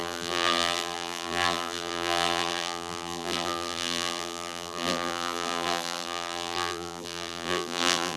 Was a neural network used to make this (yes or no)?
yes